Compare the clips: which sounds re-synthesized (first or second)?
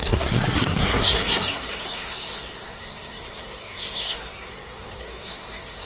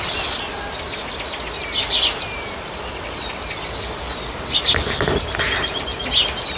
first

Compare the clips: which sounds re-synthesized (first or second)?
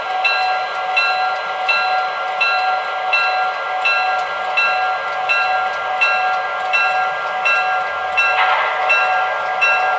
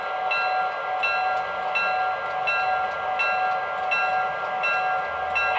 first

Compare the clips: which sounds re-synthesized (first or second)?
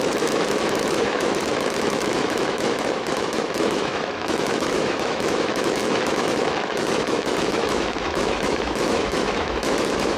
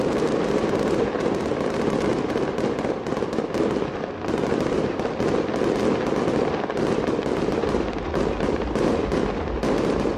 first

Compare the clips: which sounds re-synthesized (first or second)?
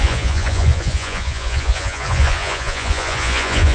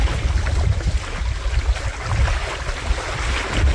first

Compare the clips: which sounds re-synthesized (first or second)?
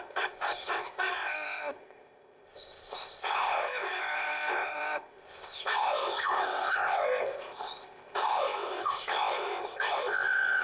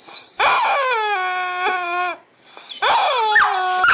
first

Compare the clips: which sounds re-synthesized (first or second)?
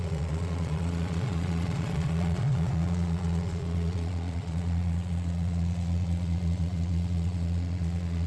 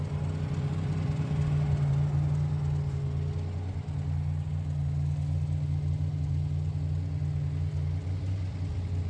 first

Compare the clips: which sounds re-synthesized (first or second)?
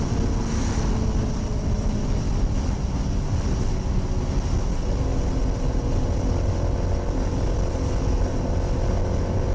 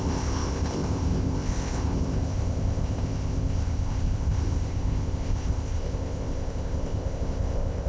second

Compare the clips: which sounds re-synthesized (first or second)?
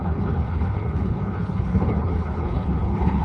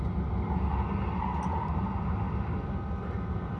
first